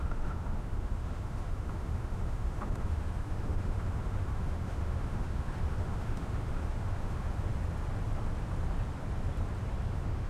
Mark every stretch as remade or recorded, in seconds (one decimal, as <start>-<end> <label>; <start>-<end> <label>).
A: 0.0-7.5 remade; 7.5-9.9 recorded; 9.9-10.3 remade